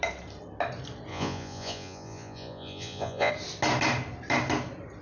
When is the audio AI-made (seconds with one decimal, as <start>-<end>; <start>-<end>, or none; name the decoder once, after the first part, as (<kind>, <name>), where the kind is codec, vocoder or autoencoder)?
1.1-3.3 (vocoder, Vocos)